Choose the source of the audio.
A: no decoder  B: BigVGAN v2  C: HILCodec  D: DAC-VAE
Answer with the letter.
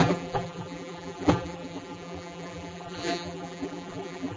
B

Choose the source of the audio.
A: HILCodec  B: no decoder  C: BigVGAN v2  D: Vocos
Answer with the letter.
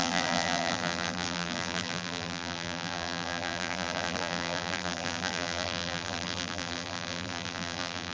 C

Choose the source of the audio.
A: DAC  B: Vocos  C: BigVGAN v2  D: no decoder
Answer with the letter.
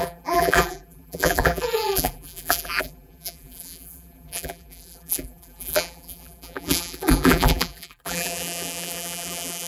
C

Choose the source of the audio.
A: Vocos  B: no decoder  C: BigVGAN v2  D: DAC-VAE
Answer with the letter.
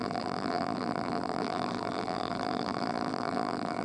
C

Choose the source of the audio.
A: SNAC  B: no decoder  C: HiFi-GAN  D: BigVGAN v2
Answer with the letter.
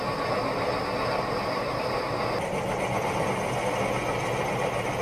B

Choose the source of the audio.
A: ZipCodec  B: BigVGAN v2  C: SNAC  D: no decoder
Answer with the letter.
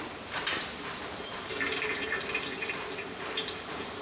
B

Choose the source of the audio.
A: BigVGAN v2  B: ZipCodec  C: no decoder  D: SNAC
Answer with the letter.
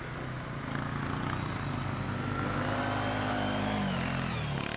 C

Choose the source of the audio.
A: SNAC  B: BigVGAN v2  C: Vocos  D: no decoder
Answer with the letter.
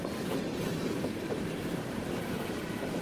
B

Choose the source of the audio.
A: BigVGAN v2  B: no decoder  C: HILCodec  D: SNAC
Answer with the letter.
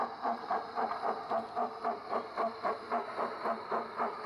A